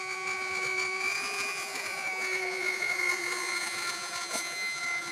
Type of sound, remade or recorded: remade